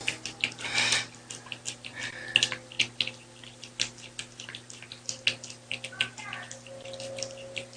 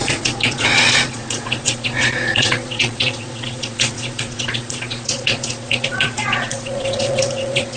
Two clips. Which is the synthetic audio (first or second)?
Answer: second